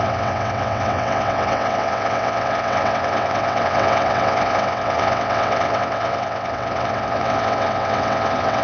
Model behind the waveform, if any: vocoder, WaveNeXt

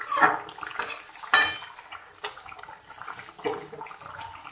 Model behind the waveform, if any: none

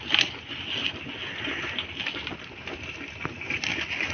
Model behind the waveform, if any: none